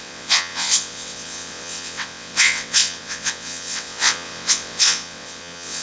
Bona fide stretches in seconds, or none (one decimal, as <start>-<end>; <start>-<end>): none